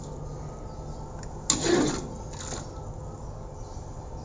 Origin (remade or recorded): recorded